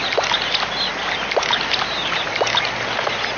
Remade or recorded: recorded